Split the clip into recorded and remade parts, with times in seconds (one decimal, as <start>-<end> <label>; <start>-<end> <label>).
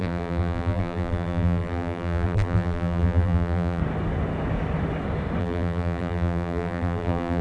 0.0-3.8 remade; 3.8-5.4 recorded; 5.4-7.4 remade